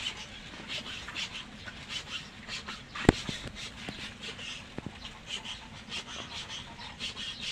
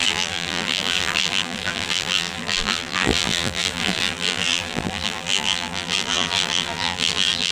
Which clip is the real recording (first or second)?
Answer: first